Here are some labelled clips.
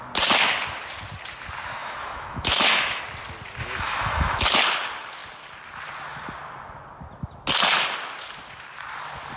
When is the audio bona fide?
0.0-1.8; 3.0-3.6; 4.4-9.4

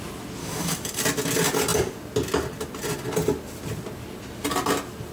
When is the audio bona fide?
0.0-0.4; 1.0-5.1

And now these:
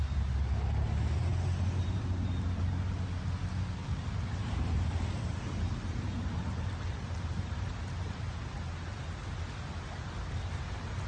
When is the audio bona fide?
0.0-3.8; 8.5-11.1